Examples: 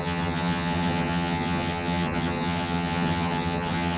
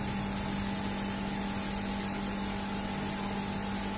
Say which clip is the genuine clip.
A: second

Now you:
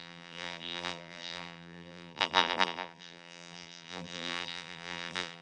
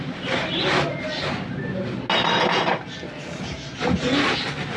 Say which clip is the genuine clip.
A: second